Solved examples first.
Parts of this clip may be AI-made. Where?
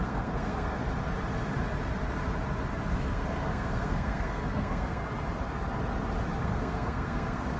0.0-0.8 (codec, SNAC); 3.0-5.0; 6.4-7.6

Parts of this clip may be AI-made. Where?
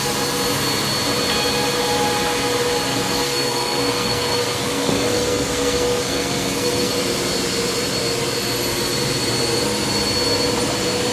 2.9-6.9 (codec, SNAC)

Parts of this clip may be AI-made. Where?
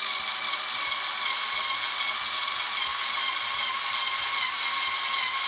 none